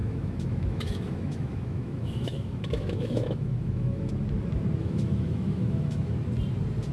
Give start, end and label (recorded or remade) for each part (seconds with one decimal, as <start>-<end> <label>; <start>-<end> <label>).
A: 0.0-4.1 remade; 4.1-4.8 recorded; 4.8-6.1 remade; 6.1-6.9 recorded